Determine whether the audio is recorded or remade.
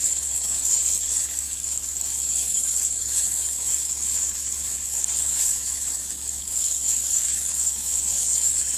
remade